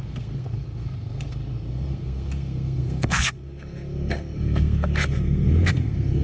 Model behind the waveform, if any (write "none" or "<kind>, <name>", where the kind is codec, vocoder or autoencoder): codec, SNAC